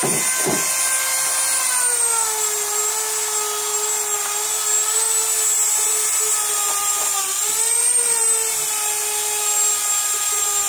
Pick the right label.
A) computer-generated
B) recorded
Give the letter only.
B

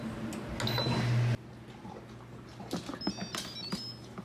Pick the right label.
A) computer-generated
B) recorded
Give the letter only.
B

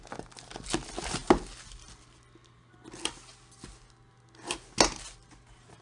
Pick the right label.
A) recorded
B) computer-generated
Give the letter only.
A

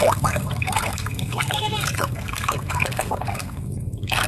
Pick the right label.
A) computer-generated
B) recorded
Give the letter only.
A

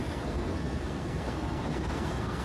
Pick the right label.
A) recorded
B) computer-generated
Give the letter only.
B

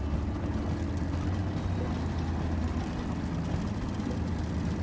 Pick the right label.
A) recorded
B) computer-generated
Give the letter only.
A